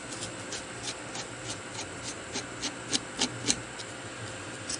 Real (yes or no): yes